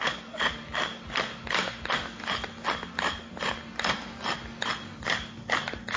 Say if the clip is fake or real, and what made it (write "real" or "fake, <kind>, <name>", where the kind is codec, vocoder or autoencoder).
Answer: real